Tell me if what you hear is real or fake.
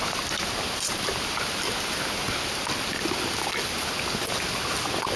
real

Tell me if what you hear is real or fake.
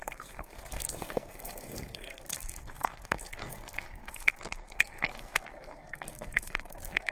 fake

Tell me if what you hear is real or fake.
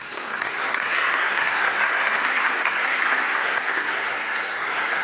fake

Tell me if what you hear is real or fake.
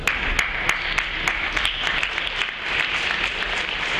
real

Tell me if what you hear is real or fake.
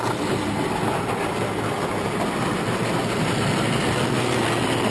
real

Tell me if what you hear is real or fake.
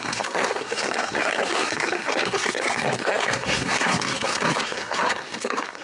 fake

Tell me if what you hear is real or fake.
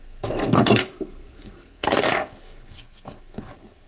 fake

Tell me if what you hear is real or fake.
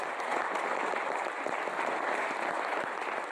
real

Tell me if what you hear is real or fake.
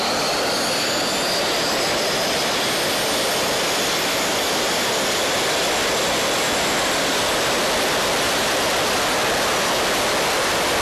real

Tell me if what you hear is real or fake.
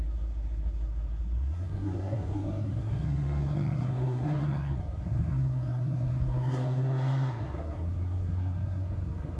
fake